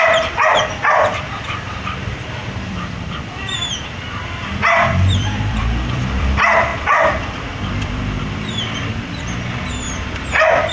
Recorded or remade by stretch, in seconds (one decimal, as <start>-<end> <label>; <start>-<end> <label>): 0.0-10.7 remade